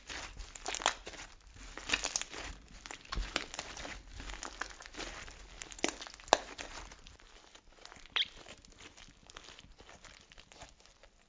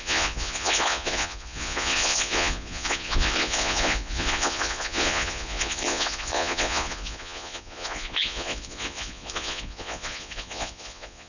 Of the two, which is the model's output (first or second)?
second